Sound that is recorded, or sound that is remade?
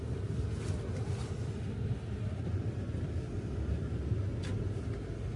recorded